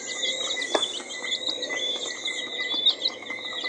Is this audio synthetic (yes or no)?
no